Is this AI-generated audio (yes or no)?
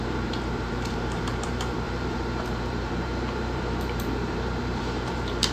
yes